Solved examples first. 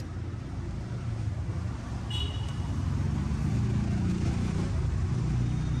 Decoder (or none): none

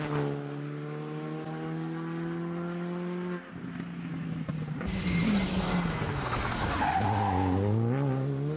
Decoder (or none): none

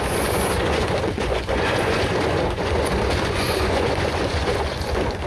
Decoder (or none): vocoder, Vocos